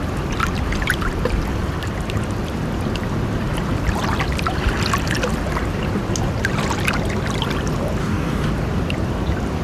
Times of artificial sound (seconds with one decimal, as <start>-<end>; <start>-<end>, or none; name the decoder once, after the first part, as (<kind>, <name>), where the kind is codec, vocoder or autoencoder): 8.0-8.5 (codec, DAC)